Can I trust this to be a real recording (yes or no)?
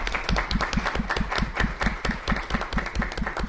yes